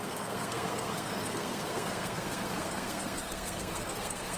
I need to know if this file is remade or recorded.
remade